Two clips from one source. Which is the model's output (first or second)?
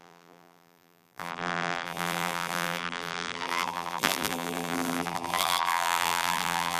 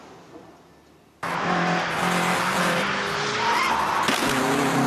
first